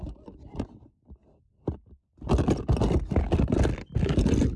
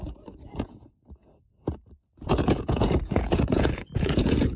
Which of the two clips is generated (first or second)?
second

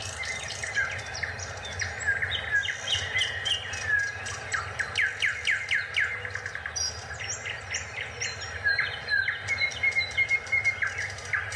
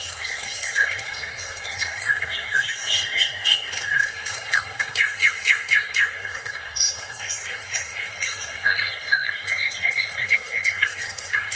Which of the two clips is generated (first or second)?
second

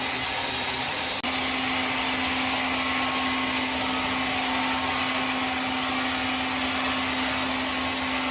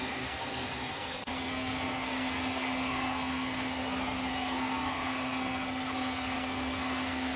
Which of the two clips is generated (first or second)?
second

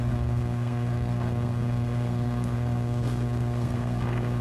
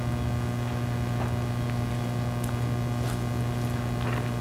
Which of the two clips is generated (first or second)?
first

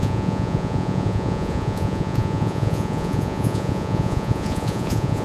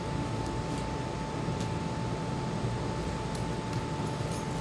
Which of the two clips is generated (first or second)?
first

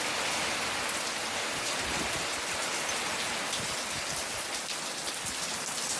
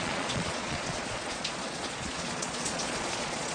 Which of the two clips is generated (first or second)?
second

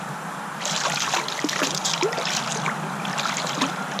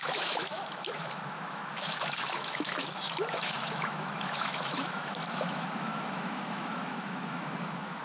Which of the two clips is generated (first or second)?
second